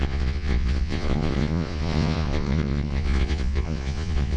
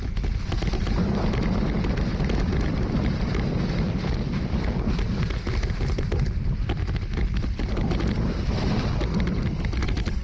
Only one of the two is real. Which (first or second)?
second